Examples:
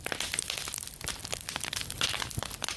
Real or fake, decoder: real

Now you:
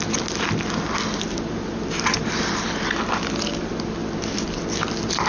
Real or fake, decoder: real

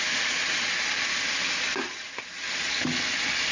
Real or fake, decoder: real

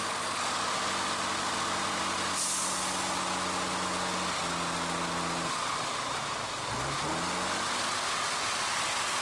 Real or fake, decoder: real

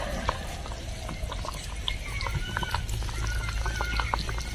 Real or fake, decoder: real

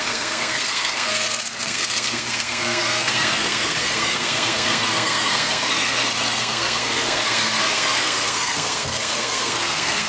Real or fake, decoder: fake, codec, SNAC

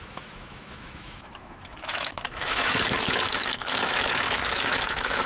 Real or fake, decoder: fake, autoencoder, DAC-VAE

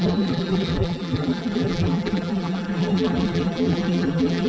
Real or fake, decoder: fake, vocoder, BigVGAN v2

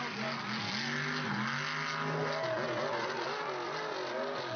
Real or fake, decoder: real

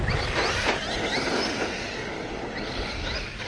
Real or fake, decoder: real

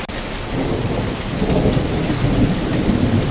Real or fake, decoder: real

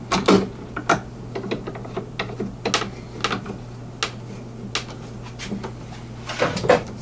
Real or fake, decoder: real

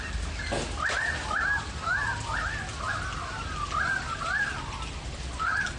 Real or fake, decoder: real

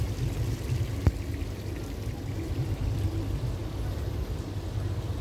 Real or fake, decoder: real